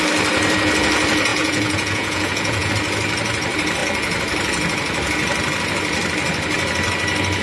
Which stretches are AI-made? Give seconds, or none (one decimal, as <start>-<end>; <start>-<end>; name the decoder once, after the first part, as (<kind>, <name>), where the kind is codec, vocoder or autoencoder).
1.3-2.7 (vocoder, Vocos)